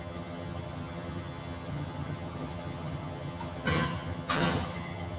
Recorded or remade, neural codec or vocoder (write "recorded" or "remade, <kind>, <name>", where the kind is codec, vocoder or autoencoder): remade, vocoder, HiFi-GAN